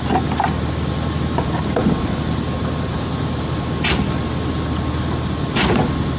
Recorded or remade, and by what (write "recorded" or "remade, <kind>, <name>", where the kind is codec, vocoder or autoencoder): recorded